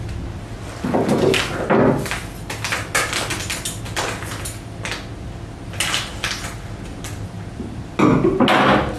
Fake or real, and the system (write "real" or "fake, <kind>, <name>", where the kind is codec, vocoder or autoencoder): real